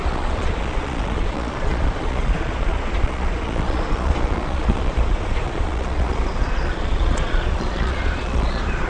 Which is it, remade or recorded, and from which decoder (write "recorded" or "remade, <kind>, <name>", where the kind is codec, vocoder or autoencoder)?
remade, vocoder, Vocos